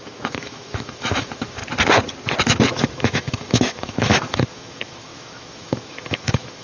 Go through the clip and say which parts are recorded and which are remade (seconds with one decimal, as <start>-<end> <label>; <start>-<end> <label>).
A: 0.0-1.6 remade; 1.6-2.7 recorded; 2.7-6.6 remade